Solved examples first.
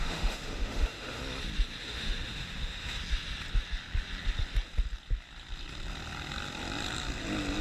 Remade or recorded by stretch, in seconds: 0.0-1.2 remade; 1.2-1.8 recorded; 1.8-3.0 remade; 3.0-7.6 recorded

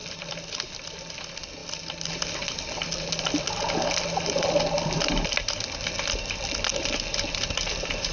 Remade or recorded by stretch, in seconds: 0.0-0.9 remade; 0.9-6.7 recorded; 6.7-8.1 remade

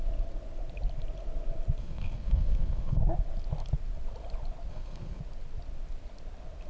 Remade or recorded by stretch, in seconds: 0.0-1.8 recorded; 1.8-3.0 remade; 3.0-4.7 recorded; 4.7-5.2 remade; 5.2-6.7 recorded

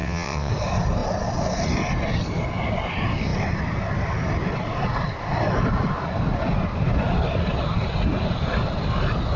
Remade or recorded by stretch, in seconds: 0.0-0.5 remade; 0.5-9.4 recorded

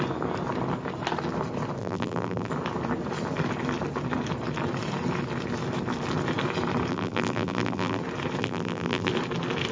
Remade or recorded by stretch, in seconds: 0.0-1.8 recorded; 1.8-2.5 remade; 2.5-6.9 recorded; 6.9-8.0 remade; 8.0-8.4 recorded; 8.4-9.1 remade; 9.1-9.7 recorded

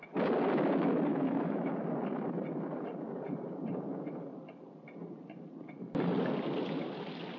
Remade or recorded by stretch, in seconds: 0.0-1.1 recorded; 1.1-1.7 remade; 1.7-7.4 recorded

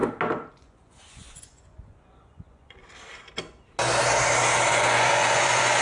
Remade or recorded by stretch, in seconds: 0.0-0.5 recorded; 0.5-2.8 remade; 2.8-4.7 recorded; 4.7-5.8 remade

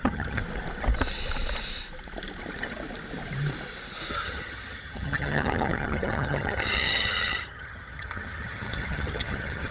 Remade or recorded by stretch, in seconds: 0.0-0.4 remade; 0.4-4.1 recorded; 4.1-9.7 remade